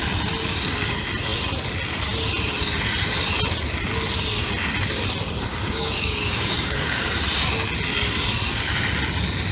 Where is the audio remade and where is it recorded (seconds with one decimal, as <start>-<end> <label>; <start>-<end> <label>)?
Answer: 0.0-5.5 recorded; 5.5-7.0 remade; 7.0-9.5 recorded